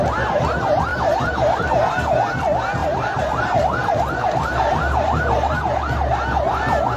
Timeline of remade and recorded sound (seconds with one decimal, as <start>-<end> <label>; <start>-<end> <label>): 0.0-0.9 recorded; 0.9-1.7 remade; 1.7-2.8 recorded; 2.8-5.6 remade; 5.6-7.0 recorded